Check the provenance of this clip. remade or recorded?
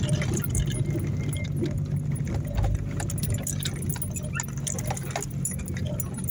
recorded